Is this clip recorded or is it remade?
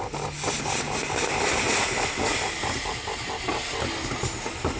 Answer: recorded